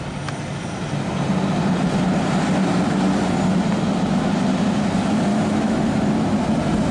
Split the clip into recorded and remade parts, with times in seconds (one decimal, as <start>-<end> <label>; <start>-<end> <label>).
0.0-5.3 recorded; 5.3-5.8 remade; 5.8-6.9 recorded